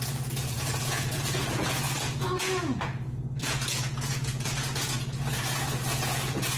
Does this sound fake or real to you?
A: fake